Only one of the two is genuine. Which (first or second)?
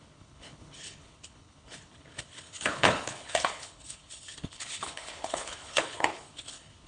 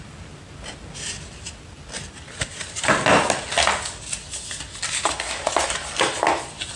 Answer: second